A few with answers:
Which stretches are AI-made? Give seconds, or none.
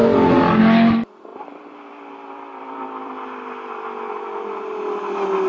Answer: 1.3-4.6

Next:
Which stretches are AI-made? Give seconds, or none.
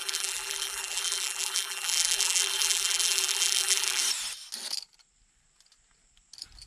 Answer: 0.0-4.0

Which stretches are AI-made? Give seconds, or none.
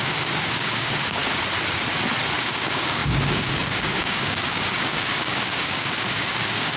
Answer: 0.0-1.2; 2.4-6.8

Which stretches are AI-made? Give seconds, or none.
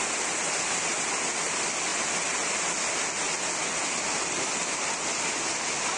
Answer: none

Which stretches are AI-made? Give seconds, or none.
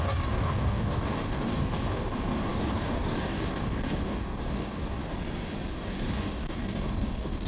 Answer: 0.0-5.0; 5.7-7.5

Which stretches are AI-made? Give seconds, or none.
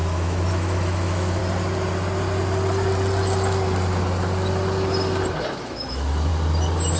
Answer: 0.0-1.4; 5.6-6.3